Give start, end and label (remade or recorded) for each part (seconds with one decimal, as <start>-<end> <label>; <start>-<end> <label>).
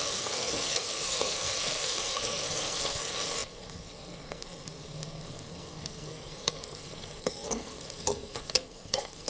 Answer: 0.0-9.3 remade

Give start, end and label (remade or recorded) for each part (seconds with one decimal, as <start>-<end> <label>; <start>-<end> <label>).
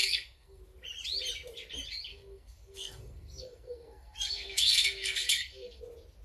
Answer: 0.0-0.6 remade; 0.6-2.1 recorded; 2.1-5.8 remade; 5.8-6.2 recorded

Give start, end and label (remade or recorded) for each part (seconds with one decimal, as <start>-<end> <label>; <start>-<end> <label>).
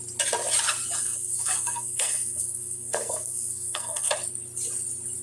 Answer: 0.0-1.0 recorded; 1.0-4.1 remade; 4.1-5.2 recorded